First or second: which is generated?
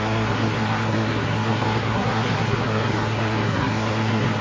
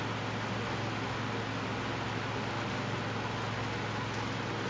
first